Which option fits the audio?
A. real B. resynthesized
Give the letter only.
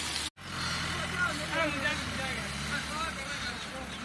A